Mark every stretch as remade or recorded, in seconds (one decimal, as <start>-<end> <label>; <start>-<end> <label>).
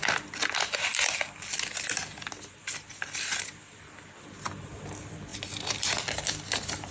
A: 0.0-6.9 recorded